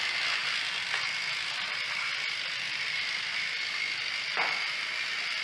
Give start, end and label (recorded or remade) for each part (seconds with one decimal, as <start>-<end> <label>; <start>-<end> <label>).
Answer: 0.0-5.4 recorded